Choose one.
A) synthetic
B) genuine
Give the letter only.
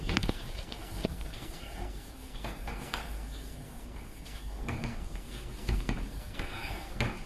A